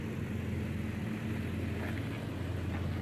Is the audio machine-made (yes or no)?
no